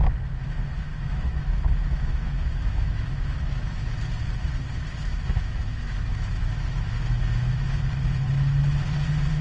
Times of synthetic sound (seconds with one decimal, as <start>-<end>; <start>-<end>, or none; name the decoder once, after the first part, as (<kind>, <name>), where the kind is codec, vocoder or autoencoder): 0.9-4.0 (autoencoder, DAC-VAE); 5.1-7.8